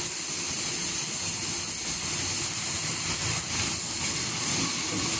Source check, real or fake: real